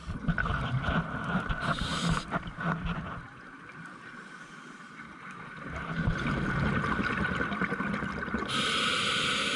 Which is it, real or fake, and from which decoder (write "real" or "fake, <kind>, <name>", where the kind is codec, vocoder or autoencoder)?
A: real